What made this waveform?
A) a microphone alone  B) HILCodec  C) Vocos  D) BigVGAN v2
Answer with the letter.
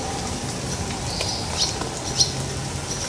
A